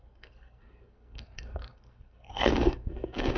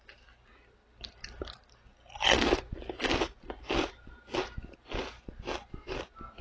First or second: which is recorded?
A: second